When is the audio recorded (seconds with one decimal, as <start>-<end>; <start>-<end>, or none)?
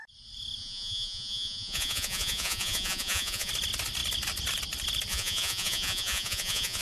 0.0-0.6; 3.5-5.1